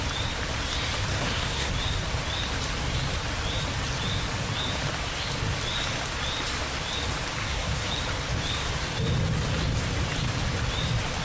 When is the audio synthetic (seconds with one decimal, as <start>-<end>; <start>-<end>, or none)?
1.1-1.7; 7.4-7.9